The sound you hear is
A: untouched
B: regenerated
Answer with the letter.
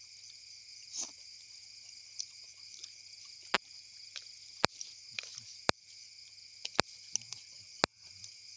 A